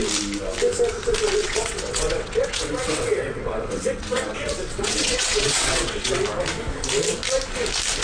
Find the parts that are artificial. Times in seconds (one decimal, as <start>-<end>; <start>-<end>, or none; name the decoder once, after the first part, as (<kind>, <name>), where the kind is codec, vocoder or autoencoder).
1.4-6.2 (vocoder, WaveNeXt)